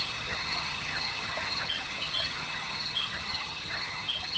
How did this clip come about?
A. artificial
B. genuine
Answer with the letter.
A